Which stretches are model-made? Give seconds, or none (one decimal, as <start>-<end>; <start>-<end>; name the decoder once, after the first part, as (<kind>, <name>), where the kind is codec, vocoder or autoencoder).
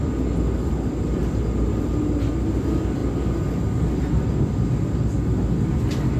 none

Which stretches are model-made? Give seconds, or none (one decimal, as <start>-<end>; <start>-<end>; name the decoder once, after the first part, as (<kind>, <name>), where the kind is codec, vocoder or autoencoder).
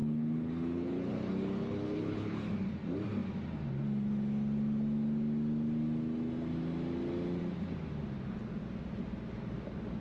0.0-2.5 (codec, HILCodec)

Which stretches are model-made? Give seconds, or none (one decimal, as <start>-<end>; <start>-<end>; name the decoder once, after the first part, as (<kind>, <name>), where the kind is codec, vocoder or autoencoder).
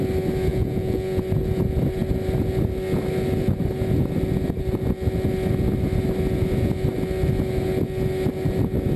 0.5-1.2 (vocoder, Vocos)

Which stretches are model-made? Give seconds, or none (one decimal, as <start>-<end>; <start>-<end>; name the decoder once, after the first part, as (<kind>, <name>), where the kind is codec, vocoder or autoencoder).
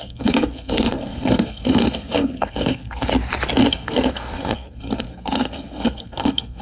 0.0-3.1 (codec, SNAC); 3.7-6.6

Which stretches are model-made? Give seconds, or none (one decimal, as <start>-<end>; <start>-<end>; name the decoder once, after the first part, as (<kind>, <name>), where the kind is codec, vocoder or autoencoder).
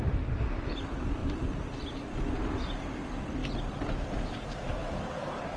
1.2-2.1 (vocoder, BigVGAN v2)